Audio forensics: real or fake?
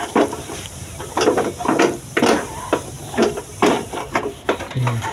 fake